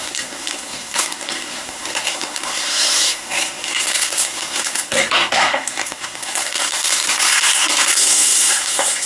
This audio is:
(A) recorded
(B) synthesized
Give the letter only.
B